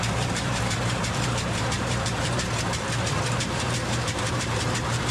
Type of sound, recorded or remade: remade